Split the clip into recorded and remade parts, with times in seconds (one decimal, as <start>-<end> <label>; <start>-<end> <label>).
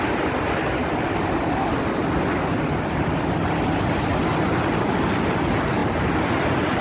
0.0-6.8 recorded